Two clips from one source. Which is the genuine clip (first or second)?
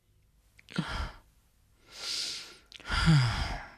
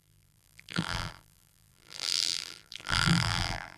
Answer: first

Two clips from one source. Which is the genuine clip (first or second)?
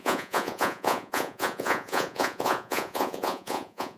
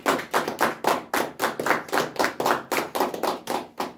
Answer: second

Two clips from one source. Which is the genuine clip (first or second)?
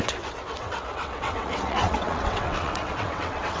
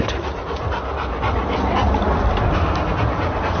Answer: second